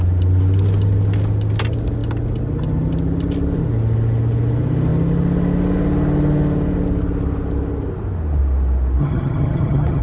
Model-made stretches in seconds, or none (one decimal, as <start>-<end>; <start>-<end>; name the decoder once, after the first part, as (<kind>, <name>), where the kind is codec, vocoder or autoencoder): 9.0-10.0 (vocoder, HiFi-GAN)